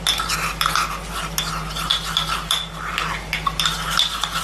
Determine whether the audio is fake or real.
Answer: real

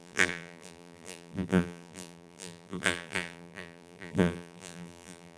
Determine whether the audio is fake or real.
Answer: fake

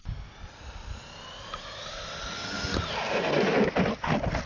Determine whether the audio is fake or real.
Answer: real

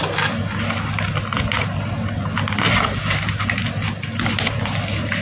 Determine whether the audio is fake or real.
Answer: real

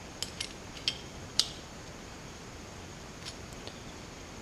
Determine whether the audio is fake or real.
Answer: real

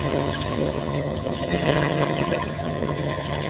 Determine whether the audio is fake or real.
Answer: fake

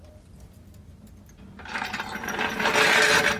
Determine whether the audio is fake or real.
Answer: real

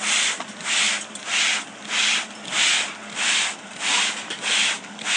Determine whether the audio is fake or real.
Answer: real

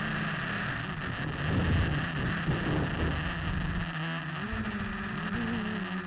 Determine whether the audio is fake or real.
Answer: real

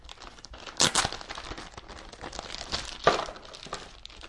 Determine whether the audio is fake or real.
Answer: real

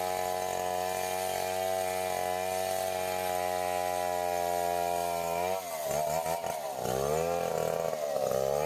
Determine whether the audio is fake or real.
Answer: real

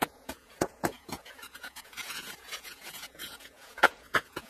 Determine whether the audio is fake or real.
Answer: fake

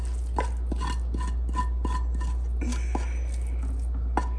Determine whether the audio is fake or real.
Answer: real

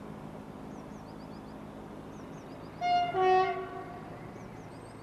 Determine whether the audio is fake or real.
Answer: real